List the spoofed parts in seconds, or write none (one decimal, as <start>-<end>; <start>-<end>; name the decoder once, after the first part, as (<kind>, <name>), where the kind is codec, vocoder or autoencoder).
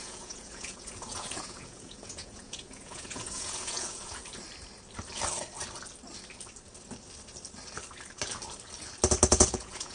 0.0-4.2 (vocoder, Vocos); 9.3-9.9